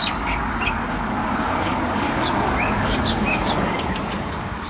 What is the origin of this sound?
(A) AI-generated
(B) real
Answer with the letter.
A